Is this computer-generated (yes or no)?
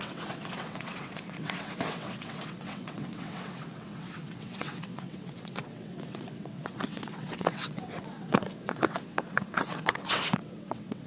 yes